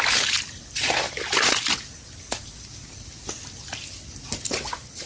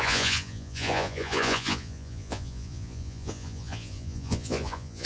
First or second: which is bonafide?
first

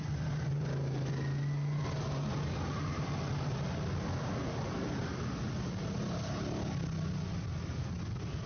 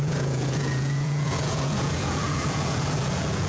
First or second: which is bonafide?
first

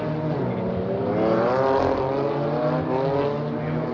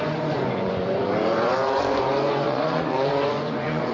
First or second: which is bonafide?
first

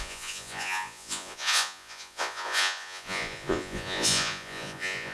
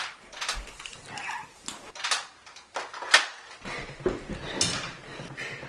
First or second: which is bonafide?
second